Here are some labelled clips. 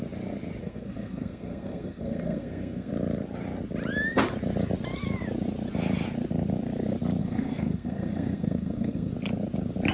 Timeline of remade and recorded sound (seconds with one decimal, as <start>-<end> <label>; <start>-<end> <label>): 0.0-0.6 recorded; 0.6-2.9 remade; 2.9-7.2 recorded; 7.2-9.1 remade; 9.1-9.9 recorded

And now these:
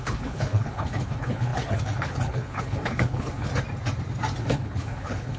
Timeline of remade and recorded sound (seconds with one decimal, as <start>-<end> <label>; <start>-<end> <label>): 0.0-3.5 remade; 3.5-4.4 recorded; 4.4-5.4 remade

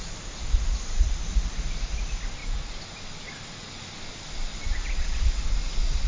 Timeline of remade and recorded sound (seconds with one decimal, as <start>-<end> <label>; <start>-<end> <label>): 0.0-6.1 recorded

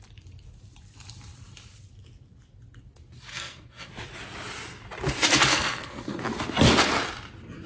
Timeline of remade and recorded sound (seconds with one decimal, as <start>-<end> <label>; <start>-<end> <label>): 0.0-3.3 recorded; 3.3-3.9 remade; 3.9-5.5 recorded; 5.5-6.2 remade; 6.2-7.7 recorded

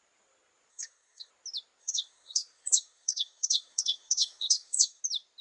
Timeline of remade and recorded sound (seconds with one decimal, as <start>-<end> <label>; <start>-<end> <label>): 0.0-0.7 recorded; 0.7-1.3 remade; 1.3-1.8 recorded; 1.8-5.0 remade; 5.0-5.4 recorded

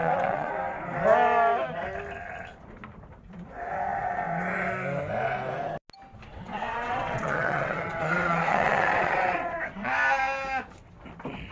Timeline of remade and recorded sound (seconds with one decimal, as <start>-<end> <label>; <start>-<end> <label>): 0.0-0.5 remade; 0.5-6.3 recorded; 6.3-9.9 remade; 9.9-11.5 recorded

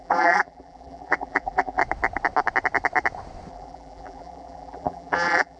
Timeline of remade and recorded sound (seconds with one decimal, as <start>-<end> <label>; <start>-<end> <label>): 0.0-1.8 remade; 1.8-3.5 recorded; 3.5-5.6 remade